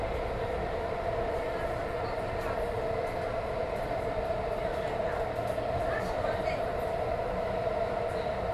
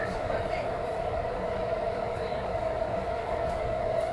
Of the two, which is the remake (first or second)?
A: second